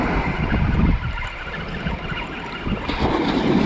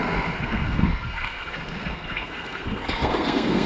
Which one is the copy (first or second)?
second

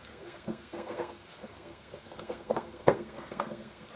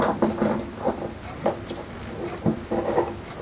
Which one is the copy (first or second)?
first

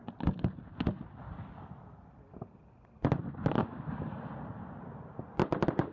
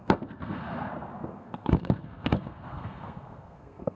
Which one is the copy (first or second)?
second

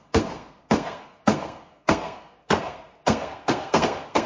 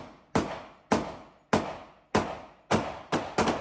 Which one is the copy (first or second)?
first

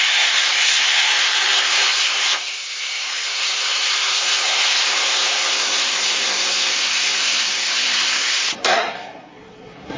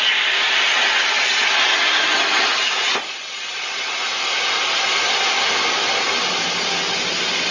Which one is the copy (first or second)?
first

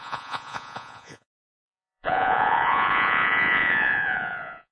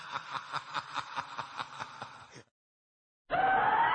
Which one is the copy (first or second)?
first